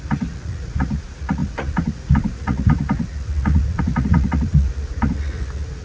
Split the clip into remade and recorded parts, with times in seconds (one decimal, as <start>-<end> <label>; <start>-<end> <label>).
0.0-5.8 remade